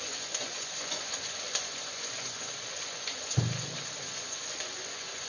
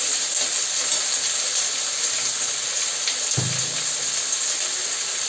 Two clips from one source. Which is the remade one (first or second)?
first